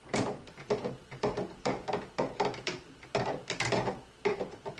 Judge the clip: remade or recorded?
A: remade